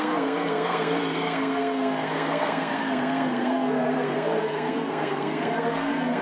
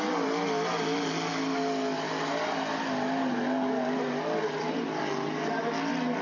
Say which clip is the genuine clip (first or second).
second